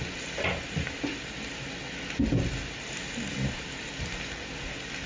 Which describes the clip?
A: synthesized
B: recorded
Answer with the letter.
B